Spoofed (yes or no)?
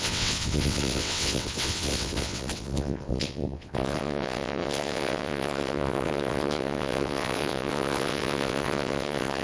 yes